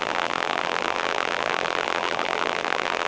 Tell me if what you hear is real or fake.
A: fake